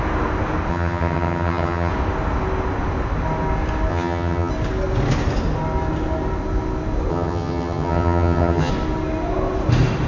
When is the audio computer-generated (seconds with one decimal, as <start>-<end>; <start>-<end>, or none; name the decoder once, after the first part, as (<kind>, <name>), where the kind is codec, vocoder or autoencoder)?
0.7-1.9 (vocoder, HiFi-GAN); 3.9-4.5; 7.1-8.7

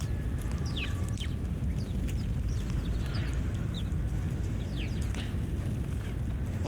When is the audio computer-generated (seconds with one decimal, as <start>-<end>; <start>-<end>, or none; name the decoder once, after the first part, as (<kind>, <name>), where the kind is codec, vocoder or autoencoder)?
3.2-3.9 (vocoder, BigVGAN v2)

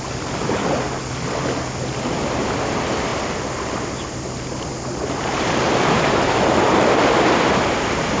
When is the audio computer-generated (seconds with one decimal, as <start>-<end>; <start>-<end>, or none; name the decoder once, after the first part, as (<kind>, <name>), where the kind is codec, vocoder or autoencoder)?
none

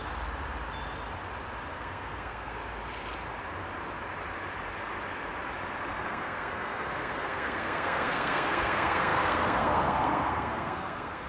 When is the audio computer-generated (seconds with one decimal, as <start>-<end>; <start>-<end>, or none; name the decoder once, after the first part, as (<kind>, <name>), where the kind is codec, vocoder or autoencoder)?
1.7-2.6 (codec, SNAC); 5.9-11.3

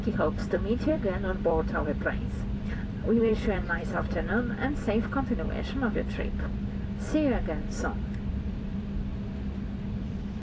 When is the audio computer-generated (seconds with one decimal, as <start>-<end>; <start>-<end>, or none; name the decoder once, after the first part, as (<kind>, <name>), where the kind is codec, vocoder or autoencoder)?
0.0-4.3 (vocoder, BigVGAN v2); 8.3-9.1; 9.9-10.4